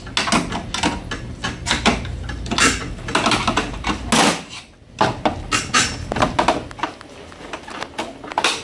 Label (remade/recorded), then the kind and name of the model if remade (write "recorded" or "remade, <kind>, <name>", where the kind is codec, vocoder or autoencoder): recorded